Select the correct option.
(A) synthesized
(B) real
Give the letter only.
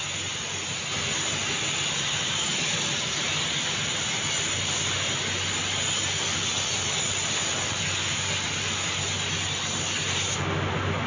B